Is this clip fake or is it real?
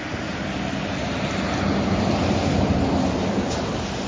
real